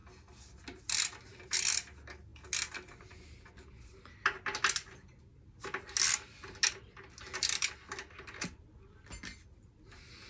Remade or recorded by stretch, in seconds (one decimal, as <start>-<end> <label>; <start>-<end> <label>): 0.0-10.3 recorded